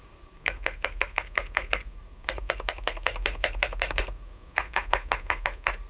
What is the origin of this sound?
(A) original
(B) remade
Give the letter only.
B